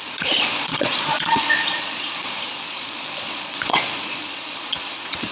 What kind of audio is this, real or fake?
fake